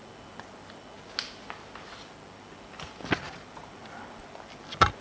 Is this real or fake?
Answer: real